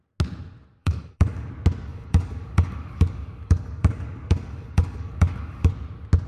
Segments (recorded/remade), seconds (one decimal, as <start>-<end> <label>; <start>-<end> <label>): 0.0-0.8 recorded; 0.8-1.5 remade; 1.5-1.9 recorded; 1.9-5.7 remade; 5.7-6.3 recorded